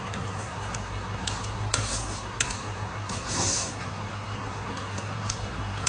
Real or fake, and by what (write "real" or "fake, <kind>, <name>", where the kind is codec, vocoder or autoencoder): fake, codec, SNAC